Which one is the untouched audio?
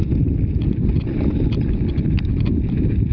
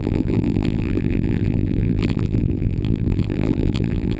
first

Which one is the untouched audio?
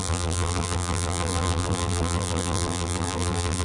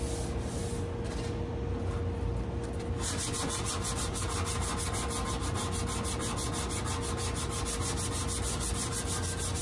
second